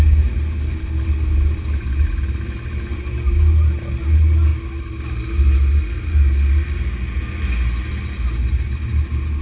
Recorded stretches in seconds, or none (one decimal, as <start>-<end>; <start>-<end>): 0.0-9.4